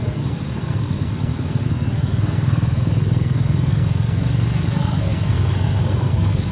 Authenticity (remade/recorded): remade